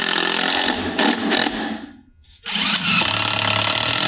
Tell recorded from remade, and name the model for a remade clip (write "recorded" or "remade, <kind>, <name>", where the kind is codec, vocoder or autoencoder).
recorded